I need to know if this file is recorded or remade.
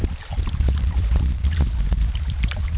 remade